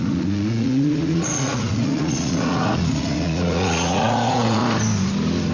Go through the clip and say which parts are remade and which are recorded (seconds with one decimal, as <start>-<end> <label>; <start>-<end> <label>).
0.0-4.6 remade; 4.6-5.5 recorded